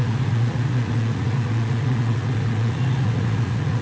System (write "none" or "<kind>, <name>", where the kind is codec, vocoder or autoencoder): vocoder, Vocos